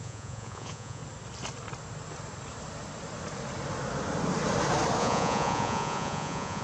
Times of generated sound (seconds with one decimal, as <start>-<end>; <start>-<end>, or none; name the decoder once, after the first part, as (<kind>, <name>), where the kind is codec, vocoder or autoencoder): 0.0-1.0 (vocoder, Vocos); 5.0-6.6